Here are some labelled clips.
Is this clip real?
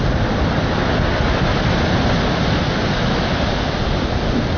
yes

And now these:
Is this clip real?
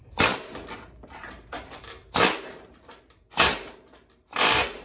no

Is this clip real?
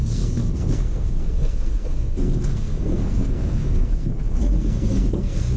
no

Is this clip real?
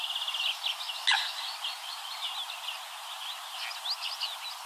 yes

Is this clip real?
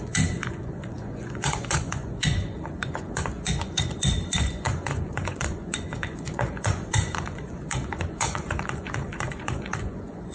no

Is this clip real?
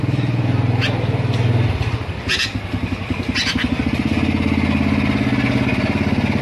yes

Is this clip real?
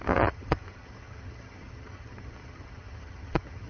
no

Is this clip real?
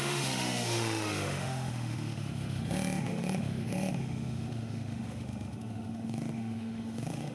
no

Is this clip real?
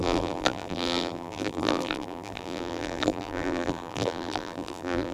no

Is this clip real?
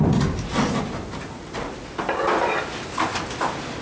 yes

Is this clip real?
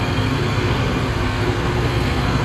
no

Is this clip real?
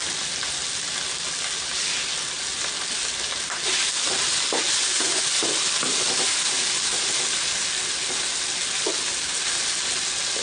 yes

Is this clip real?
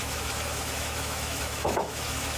no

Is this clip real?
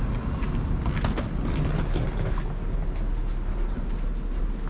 yes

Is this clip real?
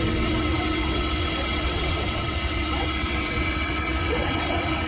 no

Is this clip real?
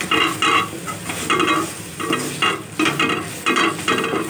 yes